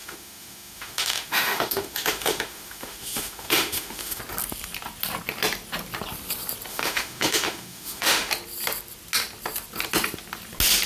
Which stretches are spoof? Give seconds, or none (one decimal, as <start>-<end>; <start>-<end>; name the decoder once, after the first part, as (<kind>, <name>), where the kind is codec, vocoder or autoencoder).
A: 0.0-4.2 (autoencoder, DAC-VAE); 6.7-8.3